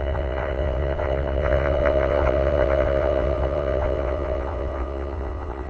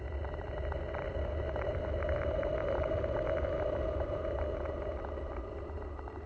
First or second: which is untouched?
second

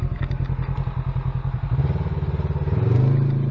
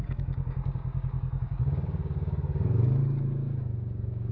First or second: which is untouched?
first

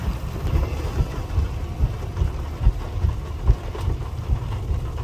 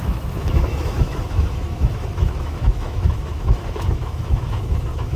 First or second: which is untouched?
first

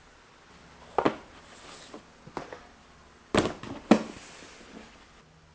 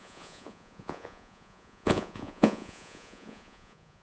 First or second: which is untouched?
first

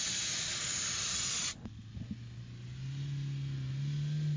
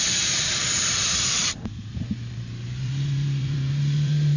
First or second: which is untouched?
first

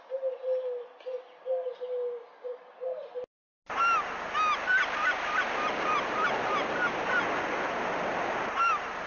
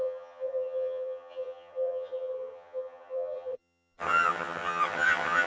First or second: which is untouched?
first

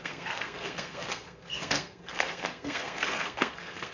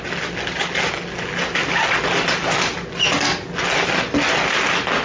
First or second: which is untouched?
second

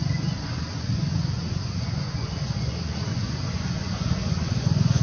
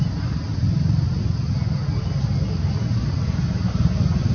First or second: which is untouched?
second